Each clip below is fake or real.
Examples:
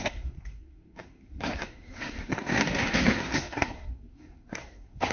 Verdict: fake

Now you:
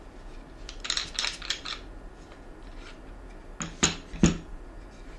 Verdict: real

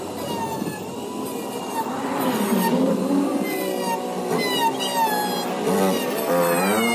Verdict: real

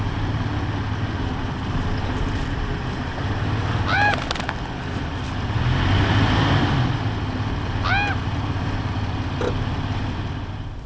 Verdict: real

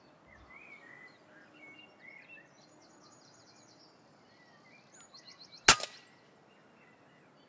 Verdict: real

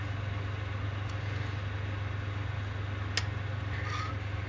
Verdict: real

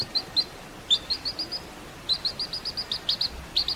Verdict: real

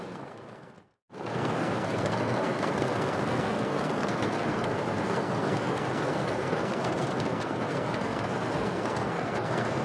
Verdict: fake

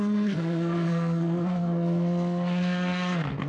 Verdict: fake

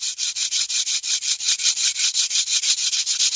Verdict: real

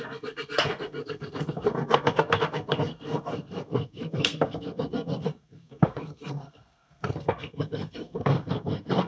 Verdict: fake